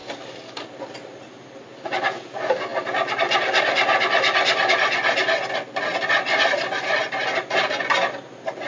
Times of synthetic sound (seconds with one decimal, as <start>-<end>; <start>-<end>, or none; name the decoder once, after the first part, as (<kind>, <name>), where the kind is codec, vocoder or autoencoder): 0.0-2.2 (vocoder, BigVGAN v2); 2.7-4.7